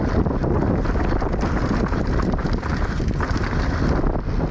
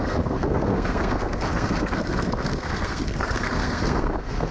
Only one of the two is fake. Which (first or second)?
second